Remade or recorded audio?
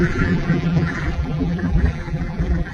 remade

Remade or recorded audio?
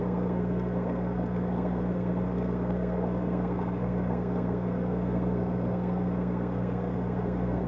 remade